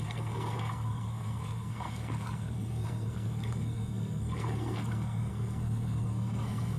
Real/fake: fake